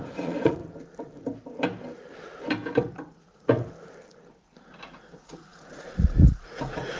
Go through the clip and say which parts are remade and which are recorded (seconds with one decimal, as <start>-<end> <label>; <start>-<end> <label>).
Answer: 0.0-0.6 remade; 0.6-4.8 recorded; 4.8-7.0 remade